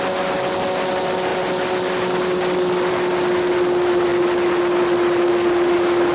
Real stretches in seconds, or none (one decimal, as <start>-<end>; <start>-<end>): 0.0-6.1